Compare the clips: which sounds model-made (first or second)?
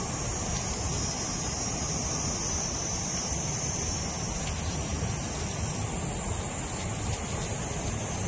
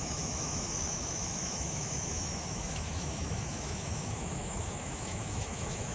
second